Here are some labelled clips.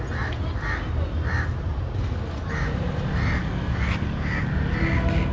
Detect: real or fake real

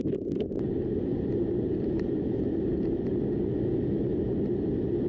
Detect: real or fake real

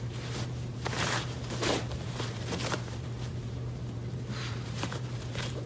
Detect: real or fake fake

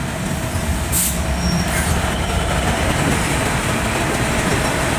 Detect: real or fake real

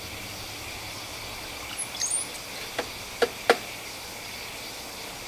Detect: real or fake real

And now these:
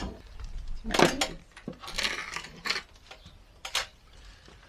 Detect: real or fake real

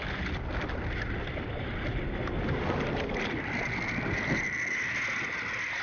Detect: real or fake real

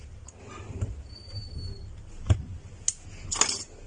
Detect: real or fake real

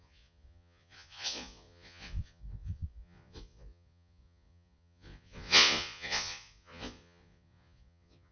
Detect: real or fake fake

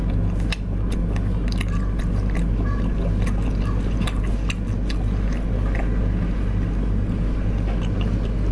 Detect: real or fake real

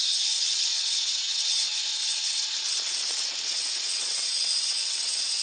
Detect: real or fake fake